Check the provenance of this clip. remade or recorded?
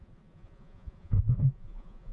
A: remade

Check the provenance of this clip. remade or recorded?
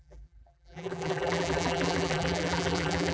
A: remade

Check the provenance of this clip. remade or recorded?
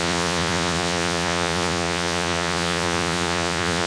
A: remade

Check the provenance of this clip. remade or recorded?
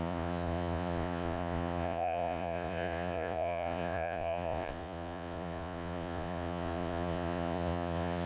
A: remade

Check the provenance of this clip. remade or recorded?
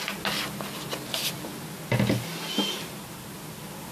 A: recorded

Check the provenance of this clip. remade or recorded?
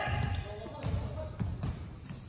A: recorded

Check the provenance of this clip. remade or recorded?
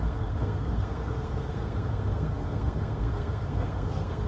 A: remade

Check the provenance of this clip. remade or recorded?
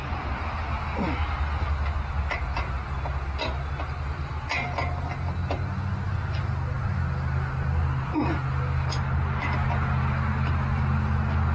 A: recorded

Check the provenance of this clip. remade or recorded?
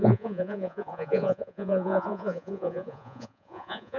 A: remade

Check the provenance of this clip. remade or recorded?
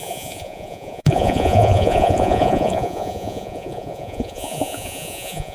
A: remade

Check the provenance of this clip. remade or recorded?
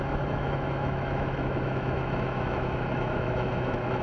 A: remade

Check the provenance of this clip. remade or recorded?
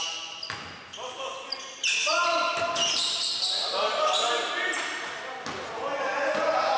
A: recorded